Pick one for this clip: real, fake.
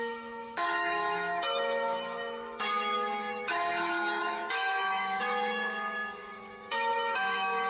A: fake